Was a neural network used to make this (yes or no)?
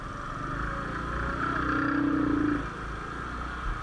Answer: no